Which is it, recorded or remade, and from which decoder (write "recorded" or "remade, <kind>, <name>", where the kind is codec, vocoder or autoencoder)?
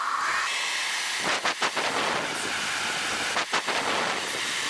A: recorded